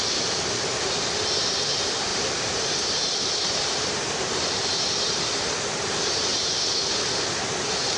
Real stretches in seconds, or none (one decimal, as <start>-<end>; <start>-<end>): 0.0-2.1; 4.7-8.0